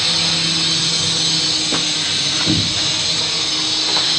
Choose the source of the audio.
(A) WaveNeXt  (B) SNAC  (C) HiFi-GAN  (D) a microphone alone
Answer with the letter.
D